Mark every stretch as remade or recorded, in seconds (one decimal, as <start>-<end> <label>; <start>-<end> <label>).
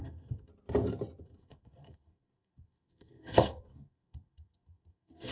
0.0-0.5 remade; 0.5-1.2 recorded; 1.2-5.3 remade